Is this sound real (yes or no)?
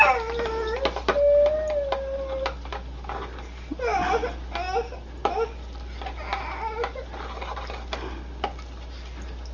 yes